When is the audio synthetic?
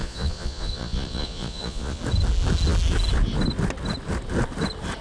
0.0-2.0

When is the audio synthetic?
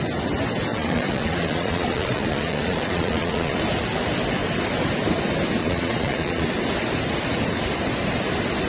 0.7-3.6; 5.6-6.5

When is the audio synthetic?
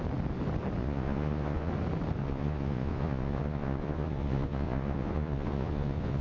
0.8-1.7; 2.2-6.2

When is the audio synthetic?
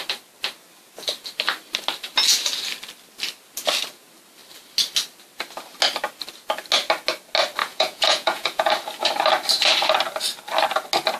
7.6-8.7